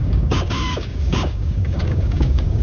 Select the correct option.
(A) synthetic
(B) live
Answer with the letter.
A